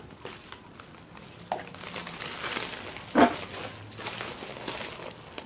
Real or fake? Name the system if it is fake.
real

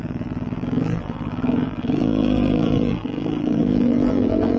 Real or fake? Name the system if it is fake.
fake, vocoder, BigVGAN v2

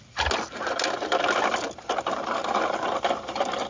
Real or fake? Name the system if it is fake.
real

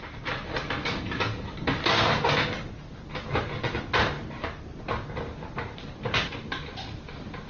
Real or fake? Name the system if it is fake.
real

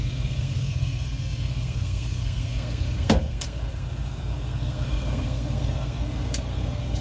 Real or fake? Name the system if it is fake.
fake, codec, SNAC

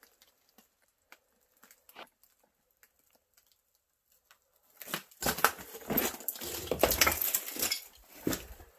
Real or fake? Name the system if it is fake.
real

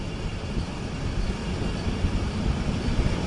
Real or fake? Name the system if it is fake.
real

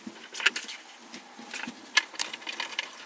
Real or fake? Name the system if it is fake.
real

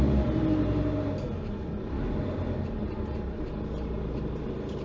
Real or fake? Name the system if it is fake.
real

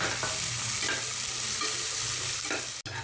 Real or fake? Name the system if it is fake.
real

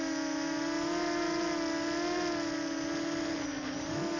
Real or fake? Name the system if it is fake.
real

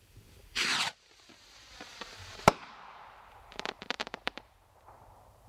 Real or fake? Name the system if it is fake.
fake, vocoder, BigVGAN v2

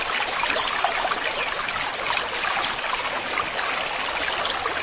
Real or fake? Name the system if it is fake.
real